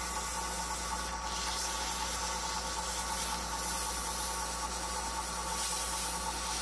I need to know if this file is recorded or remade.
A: recorded